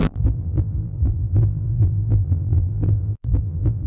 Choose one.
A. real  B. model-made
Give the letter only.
B